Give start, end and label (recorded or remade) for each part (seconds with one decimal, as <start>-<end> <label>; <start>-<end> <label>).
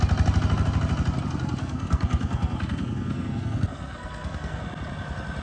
0.0-1.6 recorded; 1.6-4.6 remade; 4.6-5.4 recorded